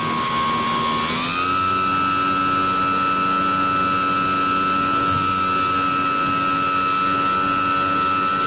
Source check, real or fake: real